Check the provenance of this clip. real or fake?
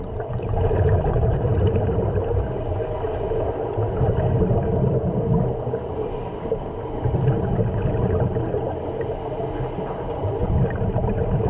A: real